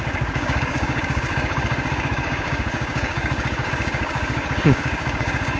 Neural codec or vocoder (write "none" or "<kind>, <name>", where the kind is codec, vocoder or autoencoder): codec, DAC